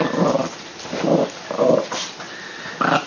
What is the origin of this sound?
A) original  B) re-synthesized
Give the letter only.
A